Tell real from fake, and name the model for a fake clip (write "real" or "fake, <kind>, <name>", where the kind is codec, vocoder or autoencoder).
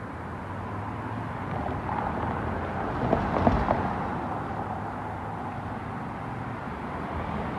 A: real